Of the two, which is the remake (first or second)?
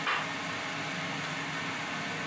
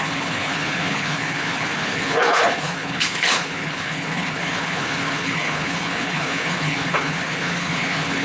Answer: second